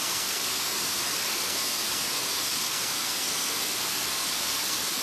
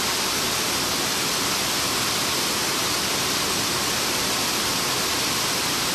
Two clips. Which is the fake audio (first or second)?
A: first